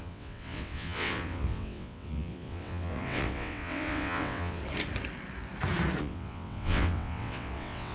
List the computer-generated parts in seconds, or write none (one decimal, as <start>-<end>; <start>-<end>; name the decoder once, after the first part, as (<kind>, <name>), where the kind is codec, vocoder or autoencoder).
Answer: 0.0-4.6 (vocoder, WaveNeXt); 6.0-7.9